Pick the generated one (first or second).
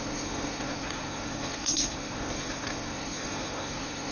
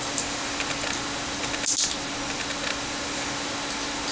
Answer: first